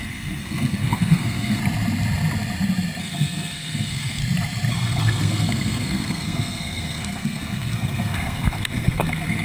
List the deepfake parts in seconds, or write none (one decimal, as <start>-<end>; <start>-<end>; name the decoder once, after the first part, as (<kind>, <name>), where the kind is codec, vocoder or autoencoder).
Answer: 0.0-1.6 (codec, SNAC); 3.0-4.2; 4.7-9.4